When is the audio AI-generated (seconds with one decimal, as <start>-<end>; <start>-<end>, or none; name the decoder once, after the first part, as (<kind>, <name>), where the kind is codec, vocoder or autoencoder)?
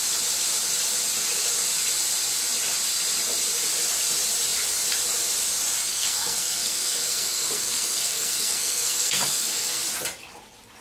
5.9-9.8 (codec, SNAC)